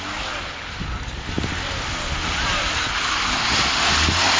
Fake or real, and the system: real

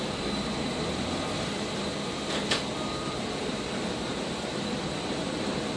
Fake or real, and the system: fake, vocoder, BigVGAN v2